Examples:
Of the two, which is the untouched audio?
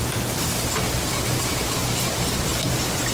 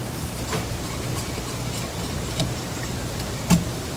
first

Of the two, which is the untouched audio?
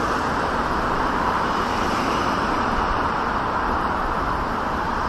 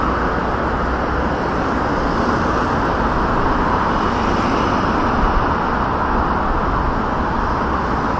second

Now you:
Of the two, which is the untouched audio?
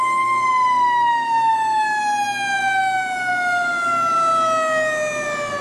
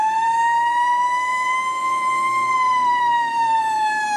first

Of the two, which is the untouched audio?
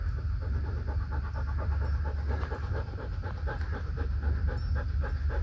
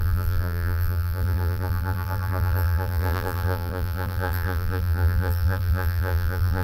first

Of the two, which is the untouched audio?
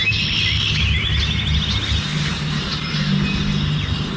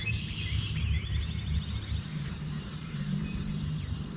first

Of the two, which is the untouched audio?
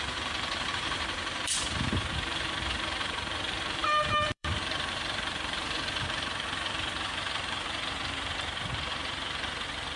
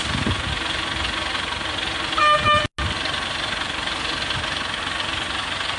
second